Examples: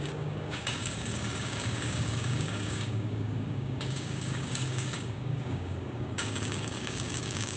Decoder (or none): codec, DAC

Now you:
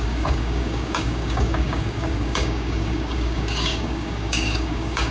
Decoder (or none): codec, DAC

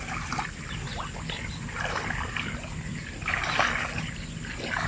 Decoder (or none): none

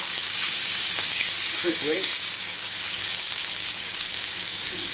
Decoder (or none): codec, DAC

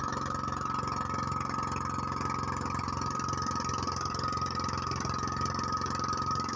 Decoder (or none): none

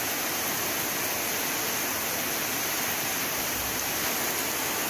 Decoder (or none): none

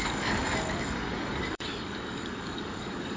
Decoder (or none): codec, DAC